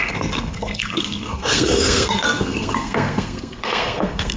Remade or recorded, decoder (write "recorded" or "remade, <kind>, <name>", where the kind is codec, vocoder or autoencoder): remade, codec, SNAC